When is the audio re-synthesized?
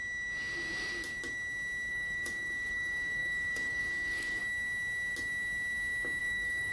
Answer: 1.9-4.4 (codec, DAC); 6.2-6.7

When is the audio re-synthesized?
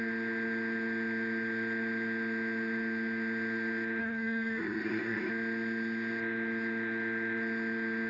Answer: 4.0-5.3 (codec, SNAC)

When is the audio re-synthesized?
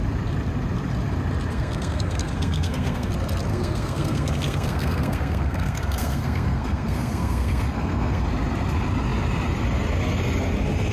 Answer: 1.5-3.1 (codec, SNAC); 3.5-8.2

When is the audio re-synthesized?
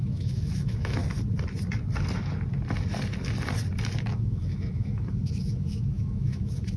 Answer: 0.0-1.0 (autoencoder, DAC-VAE); 4.0-6.8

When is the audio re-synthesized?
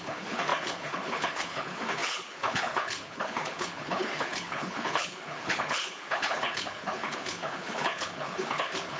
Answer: 0.0-9.0 (codec, HILCodec)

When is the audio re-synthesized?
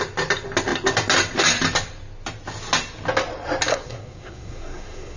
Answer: 3.7-5.2 (codec, SNAC)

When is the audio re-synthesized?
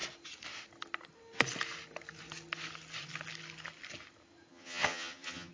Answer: 4.5-5.5 (vocoder, HiFi-GAN)